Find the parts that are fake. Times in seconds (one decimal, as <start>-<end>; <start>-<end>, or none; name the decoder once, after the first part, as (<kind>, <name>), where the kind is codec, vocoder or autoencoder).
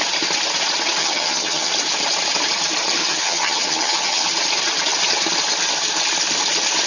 1.0-1.7 (vocoder, HiFi-GAN); 3.0-4.3